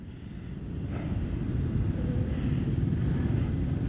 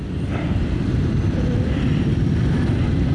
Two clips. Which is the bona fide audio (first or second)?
first